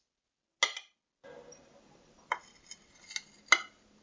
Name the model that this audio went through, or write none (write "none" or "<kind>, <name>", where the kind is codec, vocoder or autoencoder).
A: none